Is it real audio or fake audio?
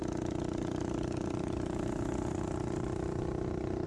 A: real